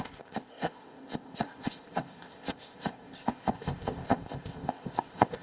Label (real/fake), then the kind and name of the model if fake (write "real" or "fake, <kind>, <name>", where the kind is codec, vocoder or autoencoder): fake, codec, ZipCodec